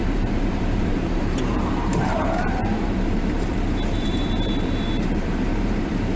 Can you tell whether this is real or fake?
fake